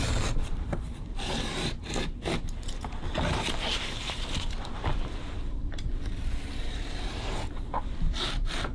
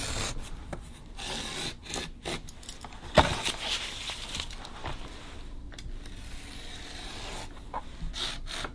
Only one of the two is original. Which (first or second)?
second